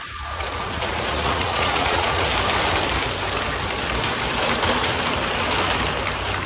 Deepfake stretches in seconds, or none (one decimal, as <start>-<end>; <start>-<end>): 0.0-2.3